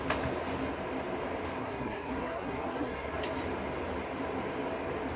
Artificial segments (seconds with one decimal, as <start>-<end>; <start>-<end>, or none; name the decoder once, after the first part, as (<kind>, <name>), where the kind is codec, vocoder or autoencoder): 1.6-3.2 (codec, SNAC)